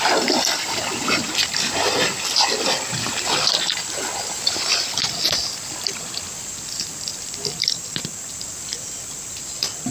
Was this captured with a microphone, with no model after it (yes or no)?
yes